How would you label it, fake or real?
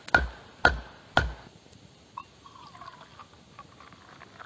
real